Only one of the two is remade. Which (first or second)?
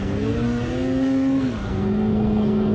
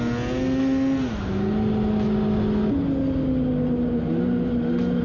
first